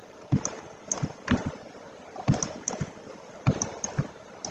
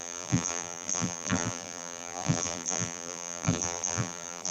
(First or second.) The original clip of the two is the first